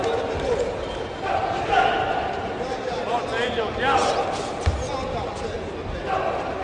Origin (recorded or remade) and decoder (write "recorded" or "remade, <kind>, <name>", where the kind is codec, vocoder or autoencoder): recorded